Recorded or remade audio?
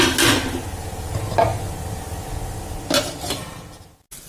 recorded